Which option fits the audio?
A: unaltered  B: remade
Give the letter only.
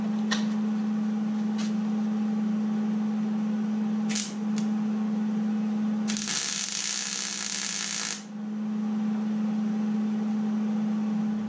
A